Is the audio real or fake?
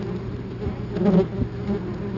real